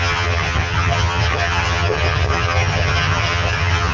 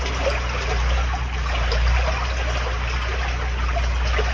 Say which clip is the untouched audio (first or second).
second